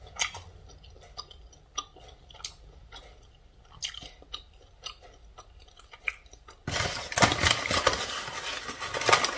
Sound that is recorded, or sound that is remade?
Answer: recorded